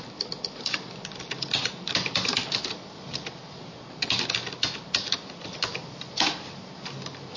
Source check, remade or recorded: recorded